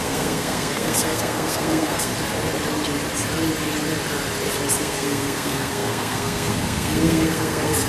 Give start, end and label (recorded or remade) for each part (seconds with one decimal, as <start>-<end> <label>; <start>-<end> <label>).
0.0-2.1 remade; 2.1-4.8 recorded; 4.8-7.9 remade